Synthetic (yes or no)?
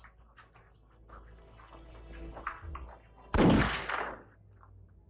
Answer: no